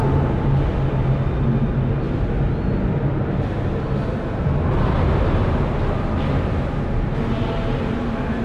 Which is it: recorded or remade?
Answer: recorded